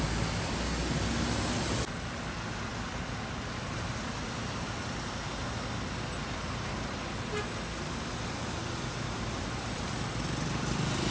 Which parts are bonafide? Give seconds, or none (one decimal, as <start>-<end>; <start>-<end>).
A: 0.0-11.1

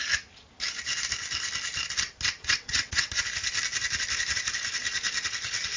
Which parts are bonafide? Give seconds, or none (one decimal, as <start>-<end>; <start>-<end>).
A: 0.0-2.4; 3.1-5.8

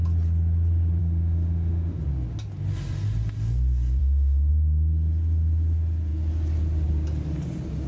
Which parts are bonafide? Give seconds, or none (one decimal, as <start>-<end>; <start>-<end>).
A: 0.0-1.0; 2.0-4.0; 4.5-7.9